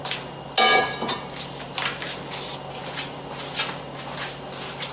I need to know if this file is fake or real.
real